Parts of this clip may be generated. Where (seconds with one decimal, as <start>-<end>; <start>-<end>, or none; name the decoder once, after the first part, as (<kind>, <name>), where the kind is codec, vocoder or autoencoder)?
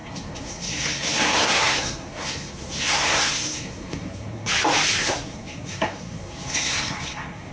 0.0-4.5 (codec, SNAC); 5.0-7.5